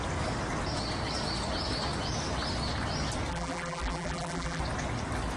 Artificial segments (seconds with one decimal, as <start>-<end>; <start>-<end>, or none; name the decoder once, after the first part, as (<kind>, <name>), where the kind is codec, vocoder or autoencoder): 3.3-4.6 (vocoder, BigVGAN v2)